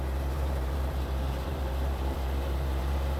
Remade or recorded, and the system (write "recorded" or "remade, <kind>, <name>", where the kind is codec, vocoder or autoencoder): remade, vocoder, BigVGAN v2